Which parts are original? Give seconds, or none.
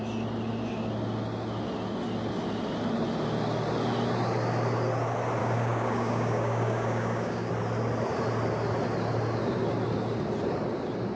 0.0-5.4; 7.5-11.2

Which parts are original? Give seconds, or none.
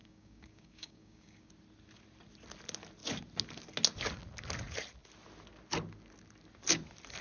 1.5-7.2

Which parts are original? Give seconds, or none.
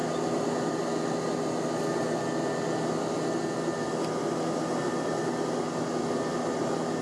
0.0-7.0